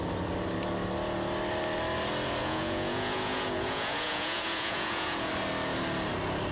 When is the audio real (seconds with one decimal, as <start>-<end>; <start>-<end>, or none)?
0.0-2.4; 5.3-6.5